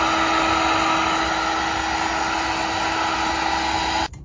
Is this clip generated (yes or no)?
no